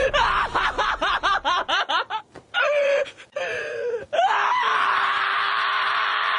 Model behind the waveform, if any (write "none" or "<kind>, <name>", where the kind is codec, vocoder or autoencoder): vocoder, BigVGAN v2